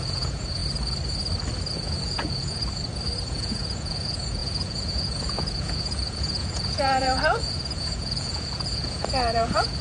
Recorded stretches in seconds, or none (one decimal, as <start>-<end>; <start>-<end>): 0.6-1.7; 2.6-3.3